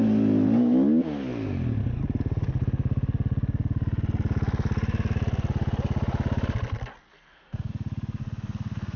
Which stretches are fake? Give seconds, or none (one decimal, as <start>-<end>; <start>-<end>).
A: 7.1-7.7; 8.2-9.0